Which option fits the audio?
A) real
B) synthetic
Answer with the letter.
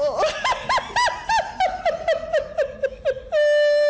A